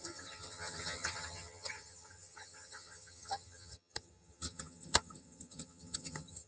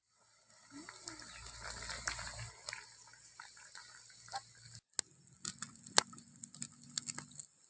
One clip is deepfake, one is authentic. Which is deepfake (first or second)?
first